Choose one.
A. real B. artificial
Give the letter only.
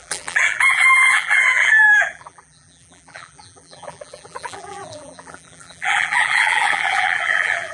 B